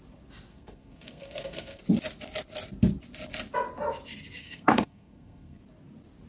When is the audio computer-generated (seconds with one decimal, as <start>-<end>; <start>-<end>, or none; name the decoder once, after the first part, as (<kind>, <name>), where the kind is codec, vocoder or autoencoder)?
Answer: 0.5-1.8 (codec, SNAC); 4.4-5.6